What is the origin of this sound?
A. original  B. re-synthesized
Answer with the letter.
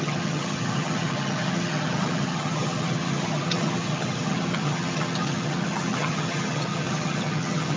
B